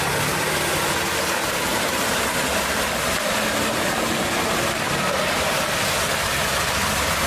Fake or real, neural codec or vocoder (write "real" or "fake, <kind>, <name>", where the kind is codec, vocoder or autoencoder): real